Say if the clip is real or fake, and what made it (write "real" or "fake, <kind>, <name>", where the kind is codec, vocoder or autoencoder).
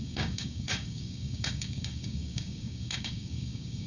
fake, codec, DAC